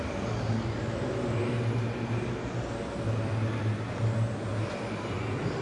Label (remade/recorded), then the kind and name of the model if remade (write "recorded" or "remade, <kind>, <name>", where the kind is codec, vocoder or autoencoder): recorded